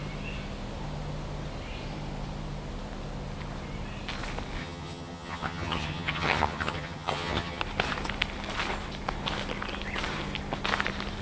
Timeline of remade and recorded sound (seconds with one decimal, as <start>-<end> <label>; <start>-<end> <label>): 0.0-4.6 recorded; 4.6-7.6 remade; 7.6-11.2 recorded